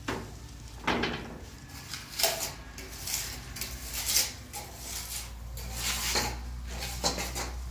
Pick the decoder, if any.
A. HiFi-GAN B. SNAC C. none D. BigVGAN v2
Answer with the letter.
C